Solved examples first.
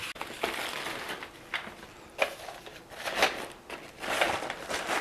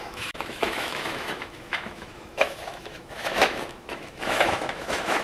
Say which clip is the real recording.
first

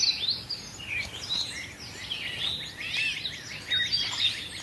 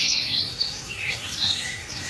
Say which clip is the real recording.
first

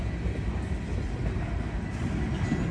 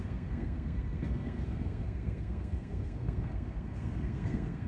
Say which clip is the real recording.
first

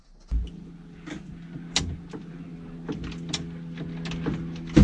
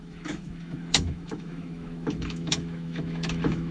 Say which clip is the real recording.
first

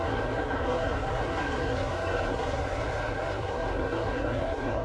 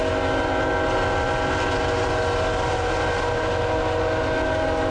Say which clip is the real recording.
second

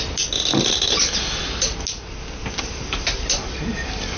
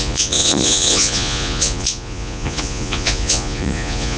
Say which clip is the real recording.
first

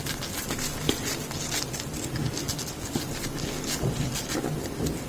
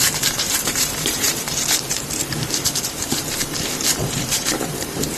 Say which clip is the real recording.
first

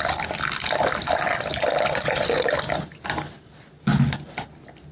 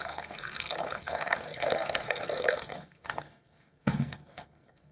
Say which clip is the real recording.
first